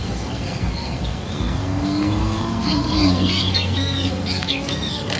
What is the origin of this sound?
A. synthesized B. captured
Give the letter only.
A